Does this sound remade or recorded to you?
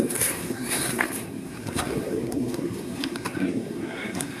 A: remade